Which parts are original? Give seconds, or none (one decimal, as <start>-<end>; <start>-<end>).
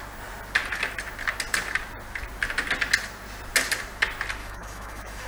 0.0-4.4